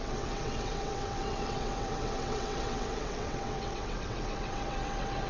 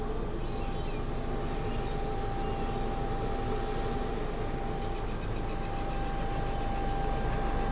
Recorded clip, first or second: second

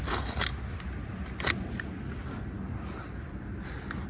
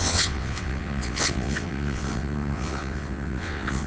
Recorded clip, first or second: first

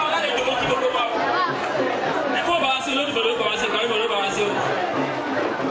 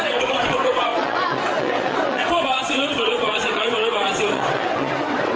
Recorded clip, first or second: first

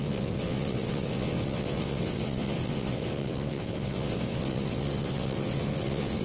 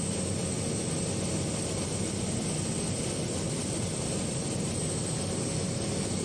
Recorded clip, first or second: second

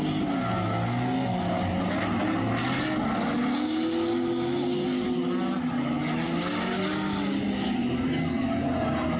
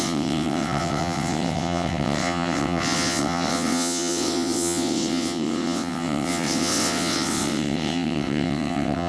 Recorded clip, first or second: first